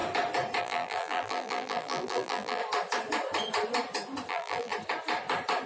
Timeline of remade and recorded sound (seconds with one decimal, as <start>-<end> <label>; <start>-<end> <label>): 0.0-0.6 recorded; 0.6-2.6 remade; 2.6-4.3 recorded; 4.3-4.7 remade; 4.7-5.7 recorded